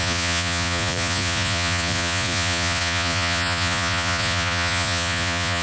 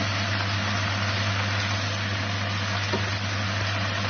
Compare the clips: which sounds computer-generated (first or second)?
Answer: first